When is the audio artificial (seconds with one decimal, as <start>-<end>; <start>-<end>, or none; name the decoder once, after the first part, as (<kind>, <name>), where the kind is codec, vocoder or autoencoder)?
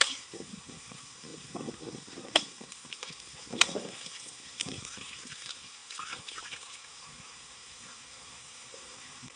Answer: 0.0-9.4 (codec, SNAC)